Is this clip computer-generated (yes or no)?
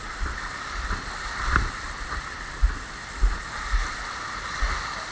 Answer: no